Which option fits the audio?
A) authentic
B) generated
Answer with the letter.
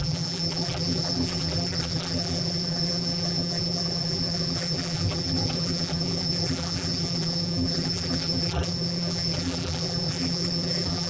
B